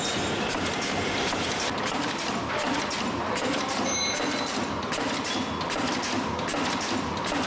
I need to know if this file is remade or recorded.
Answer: recorded